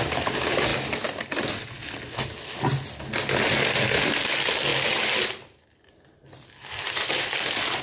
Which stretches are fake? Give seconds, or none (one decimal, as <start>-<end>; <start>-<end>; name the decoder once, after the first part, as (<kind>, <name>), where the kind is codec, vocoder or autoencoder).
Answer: none